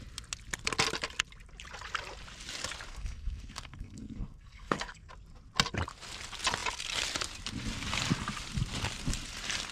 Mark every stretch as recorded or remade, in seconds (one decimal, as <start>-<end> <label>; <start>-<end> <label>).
0.0-2.9 recorded; 2.9-5.1 remade; 5.1-9.7 recorded